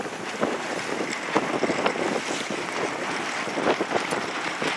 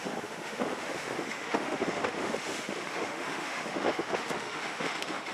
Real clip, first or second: first